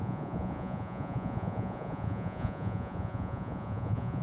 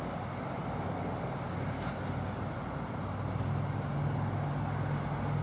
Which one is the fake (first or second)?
first